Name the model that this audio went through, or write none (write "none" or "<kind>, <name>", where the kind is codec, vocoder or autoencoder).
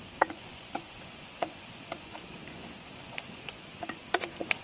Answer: vocoder, Vocos